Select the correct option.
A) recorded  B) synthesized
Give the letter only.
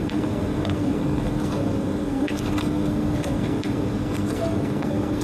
B